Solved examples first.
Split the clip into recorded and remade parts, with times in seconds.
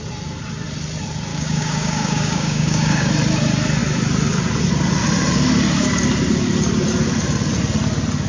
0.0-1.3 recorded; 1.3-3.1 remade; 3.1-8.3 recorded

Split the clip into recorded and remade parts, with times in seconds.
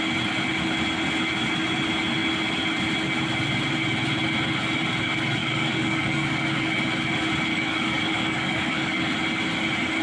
0.0-5.4 recorded; 5.4-6.8 remade; 6.8-7.5 recorded; 7.5-9.0 remade; 9.0-10.0 recorded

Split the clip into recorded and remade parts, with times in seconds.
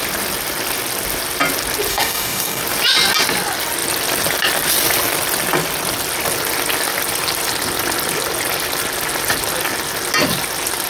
0.0-1.9 recorded; 1.9-2.6 remade; 2.6-10.9 recorded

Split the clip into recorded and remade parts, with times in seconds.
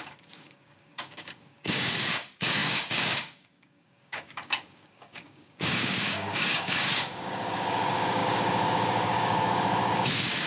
0.0-10.5 remade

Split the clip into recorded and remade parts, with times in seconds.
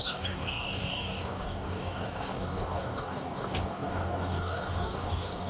0.0-5.5 remade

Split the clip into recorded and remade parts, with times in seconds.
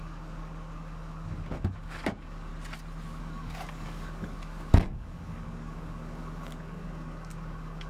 0.0-2.5 remade; 2.5-3.2 recorded; 3.2-7.9 remade